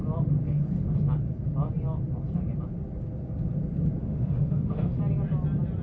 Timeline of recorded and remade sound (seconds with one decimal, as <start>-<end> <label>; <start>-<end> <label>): 0.0-4.0 recorded; 4.0-5.0 remade; 5.0-5.8 recorded

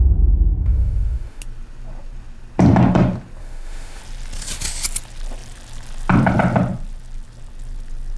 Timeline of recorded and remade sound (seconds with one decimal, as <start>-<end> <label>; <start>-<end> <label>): 0.0-0.6 recorded; 0.6-1.4 remade; 1.4-3.4 recorded; 3.4-4.0 remade; 4.0-8.2 recorded

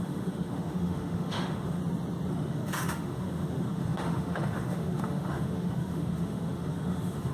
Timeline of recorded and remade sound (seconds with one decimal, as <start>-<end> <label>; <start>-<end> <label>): 0.0-1.8 remade; 1.8-2.3 recorded; 2.3-7.3 remade

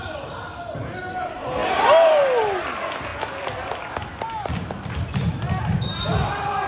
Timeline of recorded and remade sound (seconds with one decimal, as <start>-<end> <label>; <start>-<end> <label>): 0.0-6.7 recorded

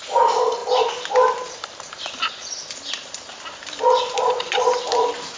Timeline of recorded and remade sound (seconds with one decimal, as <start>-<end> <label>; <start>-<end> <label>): 0.0-5.4 recorded

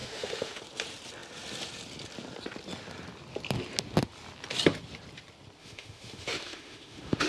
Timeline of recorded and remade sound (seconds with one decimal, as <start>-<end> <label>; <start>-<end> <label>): 0.0-0.6 remade; 0.6-5.6 recorded; 5.6-7.3 remade

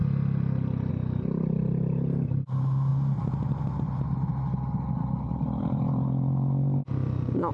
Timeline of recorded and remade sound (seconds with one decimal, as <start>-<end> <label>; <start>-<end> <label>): 0.0-7.5 recorded